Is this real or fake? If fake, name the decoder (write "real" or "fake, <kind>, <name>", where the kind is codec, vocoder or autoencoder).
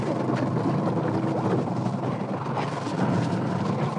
real